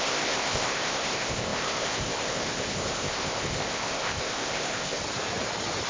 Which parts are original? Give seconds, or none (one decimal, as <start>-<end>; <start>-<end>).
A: 5.0-5.9